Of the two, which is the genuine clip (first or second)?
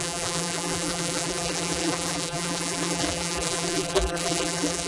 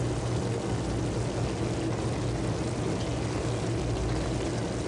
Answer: second